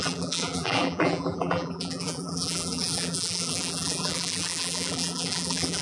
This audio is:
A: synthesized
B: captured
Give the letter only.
A